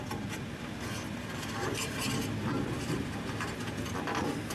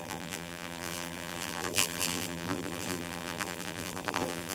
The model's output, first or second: second